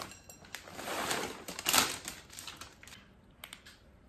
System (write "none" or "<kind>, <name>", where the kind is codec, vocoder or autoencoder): none